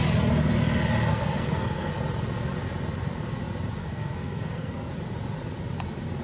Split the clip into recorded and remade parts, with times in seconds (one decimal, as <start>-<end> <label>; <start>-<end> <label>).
0.0-1.1 recorded; 1.1-1.9 remade; 1.9-3.8 recorded; 3.8-4.9 remade; 4.9-6.2 recorded